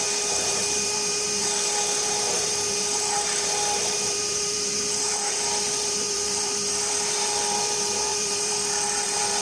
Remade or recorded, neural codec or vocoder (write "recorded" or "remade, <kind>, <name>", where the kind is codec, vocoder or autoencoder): remade, vocoder, BigVGAN v2